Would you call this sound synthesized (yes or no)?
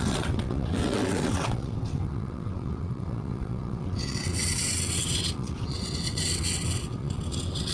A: yes